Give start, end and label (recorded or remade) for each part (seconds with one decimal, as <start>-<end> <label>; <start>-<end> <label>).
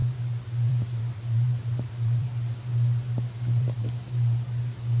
0.0-2.7 remade; 2.7-3.6 recorded; 3.6-5.0 remade